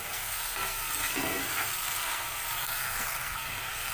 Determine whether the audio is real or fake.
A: fake